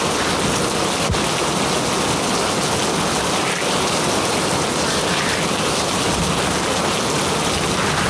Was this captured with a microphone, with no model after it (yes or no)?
yes